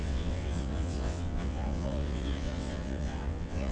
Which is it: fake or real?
fake